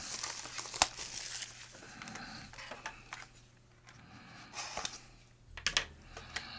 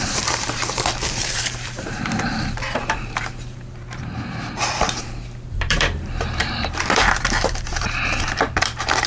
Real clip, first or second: first